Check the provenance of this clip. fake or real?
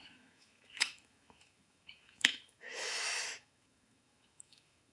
fake